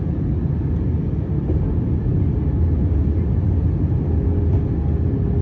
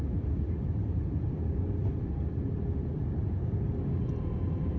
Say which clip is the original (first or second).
first